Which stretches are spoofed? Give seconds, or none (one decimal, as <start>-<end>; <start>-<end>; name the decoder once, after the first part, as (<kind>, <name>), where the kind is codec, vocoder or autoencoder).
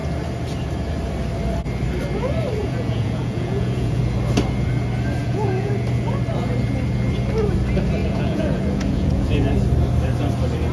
2.6-4.0 (vocoder, Vocos); 5.2-5.7; 8.0-9.5